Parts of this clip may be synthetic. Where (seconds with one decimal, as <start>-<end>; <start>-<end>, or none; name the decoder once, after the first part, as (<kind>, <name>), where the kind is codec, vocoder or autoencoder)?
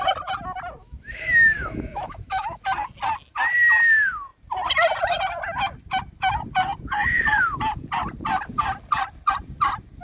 0.8-2.6 (autoencoder, DAC-VAE)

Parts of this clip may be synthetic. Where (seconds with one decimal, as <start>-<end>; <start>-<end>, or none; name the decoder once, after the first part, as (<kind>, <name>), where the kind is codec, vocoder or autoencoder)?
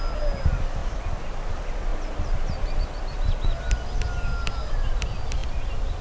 none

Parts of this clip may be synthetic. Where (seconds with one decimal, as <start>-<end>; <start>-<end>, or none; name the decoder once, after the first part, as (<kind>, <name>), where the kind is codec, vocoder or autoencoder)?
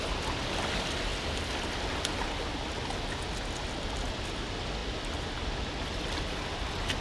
none